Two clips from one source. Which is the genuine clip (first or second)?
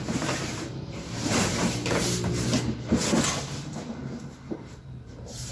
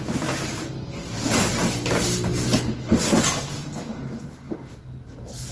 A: second